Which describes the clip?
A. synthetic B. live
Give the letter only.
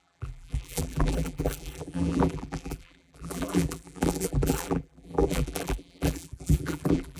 A